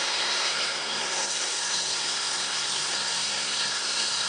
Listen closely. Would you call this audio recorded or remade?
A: remade